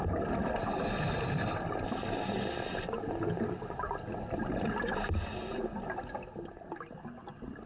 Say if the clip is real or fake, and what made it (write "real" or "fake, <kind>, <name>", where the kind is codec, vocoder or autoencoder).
real